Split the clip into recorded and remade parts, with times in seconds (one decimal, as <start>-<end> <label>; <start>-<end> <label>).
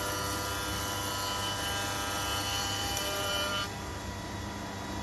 0.0-2.6 recorded; 2.6-4.6 remade; 4.6-5.0 recorded